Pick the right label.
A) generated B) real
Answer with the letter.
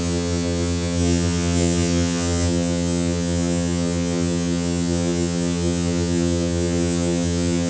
A